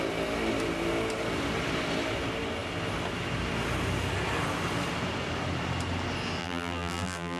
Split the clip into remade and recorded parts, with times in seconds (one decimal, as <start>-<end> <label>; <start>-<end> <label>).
0.0-6.4 recorded; 6.4-7.4 remade